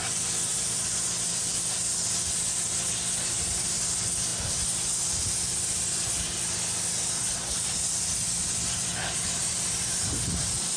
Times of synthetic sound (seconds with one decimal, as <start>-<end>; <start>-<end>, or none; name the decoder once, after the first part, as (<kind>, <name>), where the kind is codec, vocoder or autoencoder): none